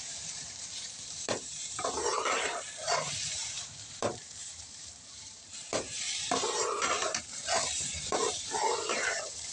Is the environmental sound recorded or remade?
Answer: remade